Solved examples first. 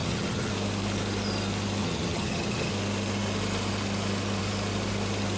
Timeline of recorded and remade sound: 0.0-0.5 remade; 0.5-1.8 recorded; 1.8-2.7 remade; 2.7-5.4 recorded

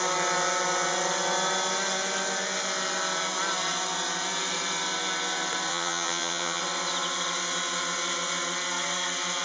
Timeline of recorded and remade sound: 0.0-5.7 recorded; 5.7-6.6 remade; 6.6-9.4 recorded

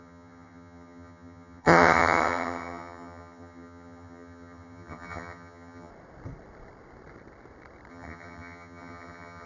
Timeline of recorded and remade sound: 0.0-5.9 remade; 5.9-7.9 recorded; 7.9-9.5 remade

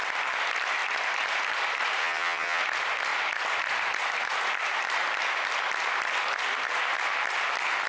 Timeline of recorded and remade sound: 0.0-2.0 recorded; 2.0-2.6 remade; 2.6-7.9 recorded

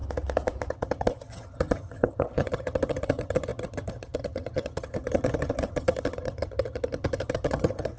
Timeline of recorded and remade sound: 0.0-0.7 recorded; 0.7-8.0 remade

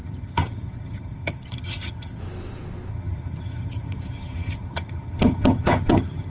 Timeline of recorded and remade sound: 0.0-2.2 remade; 2.2-2.9 recorded; 2.9-6.3 remade